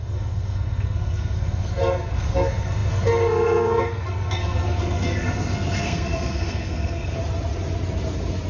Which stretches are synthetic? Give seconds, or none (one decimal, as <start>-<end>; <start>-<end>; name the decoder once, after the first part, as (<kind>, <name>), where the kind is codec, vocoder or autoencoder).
0.0-7.2 (codec, SNAC)